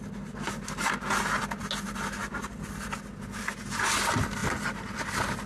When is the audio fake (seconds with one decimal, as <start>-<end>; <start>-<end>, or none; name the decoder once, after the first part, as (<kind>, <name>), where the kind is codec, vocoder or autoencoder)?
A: none